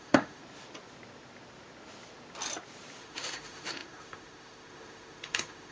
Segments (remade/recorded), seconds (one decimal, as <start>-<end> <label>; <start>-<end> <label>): 0.0-0.4 remade; 0.4-3.0 recorded; 3.0-5.7 remade